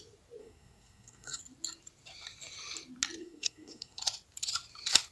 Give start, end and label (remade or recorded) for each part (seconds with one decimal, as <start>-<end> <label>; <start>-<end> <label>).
0.0-0.4 recorded; 0.4-1.4 remade; 1.4-3.2 recorded; 3.2-4.0 remade; 4.0-5.1 recorded